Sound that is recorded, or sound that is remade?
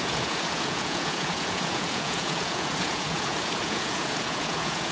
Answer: remade